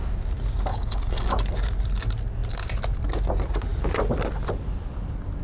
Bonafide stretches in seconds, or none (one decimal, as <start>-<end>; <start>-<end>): 0.0-0.7; 1.3-5.4